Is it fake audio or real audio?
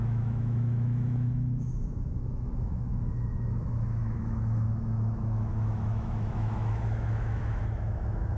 fake